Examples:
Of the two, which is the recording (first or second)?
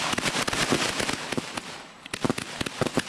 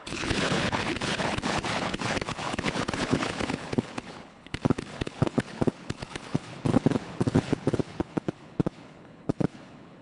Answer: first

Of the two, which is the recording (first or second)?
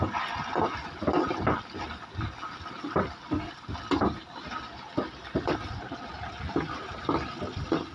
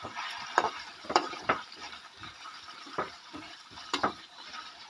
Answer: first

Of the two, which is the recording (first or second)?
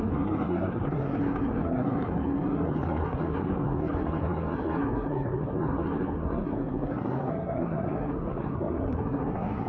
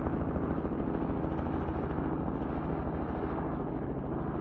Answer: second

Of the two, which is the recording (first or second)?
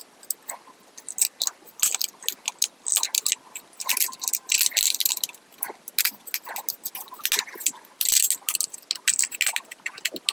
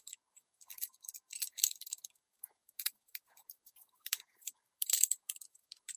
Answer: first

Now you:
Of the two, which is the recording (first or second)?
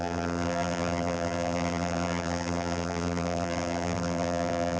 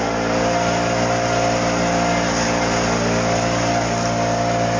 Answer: second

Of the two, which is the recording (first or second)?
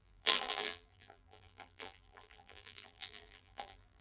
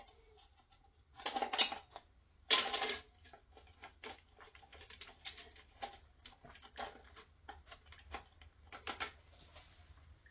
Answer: second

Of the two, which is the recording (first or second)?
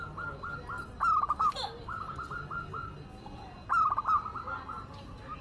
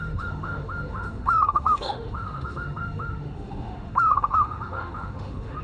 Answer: first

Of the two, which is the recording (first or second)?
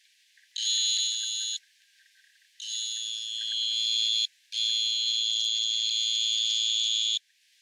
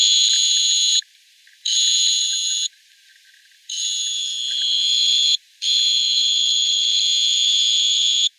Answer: first